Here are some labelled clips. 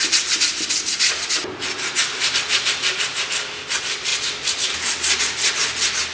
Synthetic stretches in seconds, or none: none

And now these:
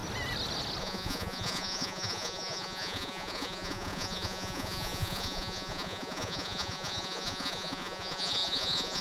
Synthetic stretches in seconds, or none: 0.8-9.0 (vocoder, Vocos)

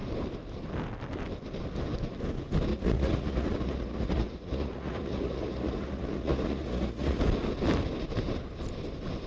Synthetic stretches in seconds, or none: 2.7-7.2 (vocoder, Vocos)

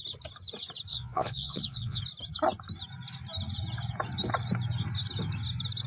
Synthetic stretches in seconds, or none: 0.9-2.0 (vocoder, Vocos)

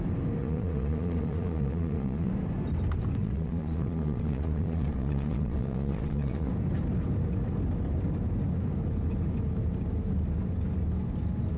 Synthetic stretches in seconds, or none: 0.4-2.3 (vocoder, Vocos); 3.2-6.5